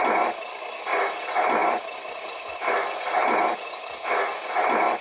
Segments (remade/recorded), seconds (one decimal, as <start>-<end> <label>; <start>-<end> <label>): 0.0-0.5 recorded; 0.5-1.1 remade; 1.1-5.0 recorded